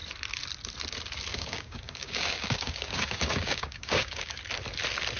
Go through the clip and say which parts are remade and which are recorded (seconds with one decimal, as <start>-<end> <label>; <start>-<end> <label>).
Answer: 0.0-1.3 recorded; 1.3-4.4 remade; 4.4-5.2 recorded